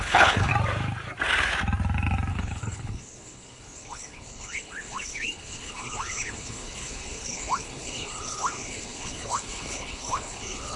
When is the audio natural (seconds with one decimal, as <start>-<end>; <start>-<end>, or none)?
0.5-2.3